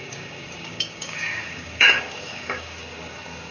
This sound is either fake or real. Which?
fake